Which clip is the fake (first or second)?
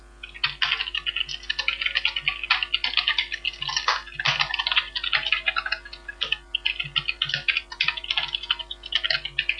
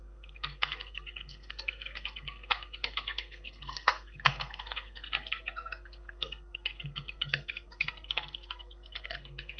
second